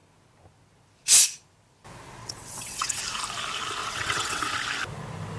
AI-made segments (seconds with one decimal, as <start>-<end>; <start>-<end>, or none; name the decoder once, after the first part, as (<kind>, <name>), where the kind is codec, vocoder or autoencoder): 2.2-3.0 (vocoder, WaveNeXt); 3.8-4.5